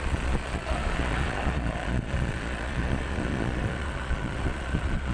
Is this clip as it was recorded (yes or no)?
no